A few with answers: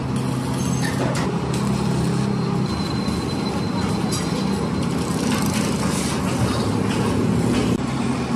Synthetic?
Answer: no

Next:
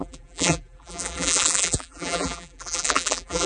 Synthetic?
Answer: yes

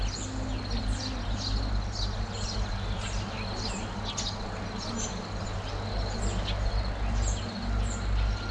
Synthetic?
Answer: no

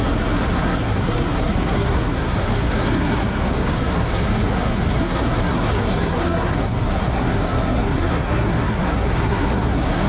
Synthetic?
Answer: yes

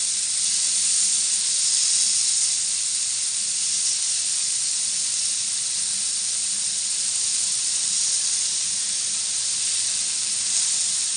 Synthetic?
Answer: no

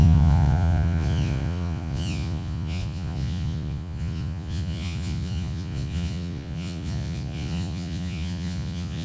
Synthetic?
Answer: yes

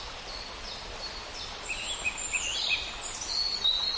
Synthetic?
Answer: no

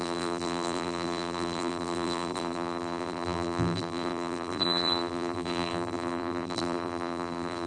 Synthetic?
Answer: yes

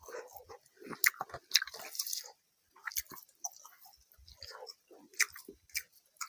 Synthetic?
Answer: no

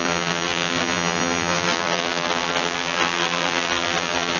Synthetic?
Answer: yes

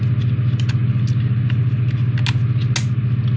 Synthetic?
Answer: no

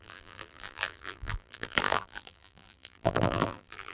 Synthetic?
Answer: yes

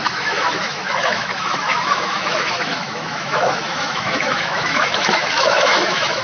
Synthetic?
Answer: yes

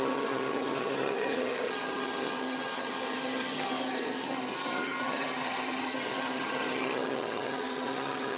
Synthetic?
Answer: yes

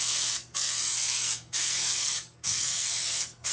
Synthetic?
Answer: yes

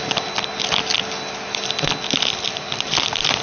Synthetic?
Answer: no